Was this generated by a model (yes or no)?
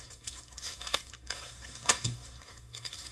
yes